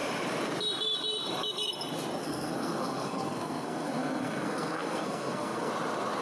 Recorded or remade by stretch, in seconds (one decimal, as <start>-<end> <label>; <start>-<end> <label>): 0.0-2.2 recorded; 2.2-5.7 remade; 5.7-6.2 recorded